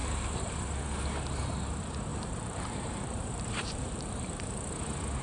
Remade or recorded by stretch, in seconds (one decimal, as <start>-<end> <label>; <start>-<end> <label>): 0.0-0.5 remade; 0.5-2.1 recorded; 2.1-4.7 remade; 4.7-5.2 recorded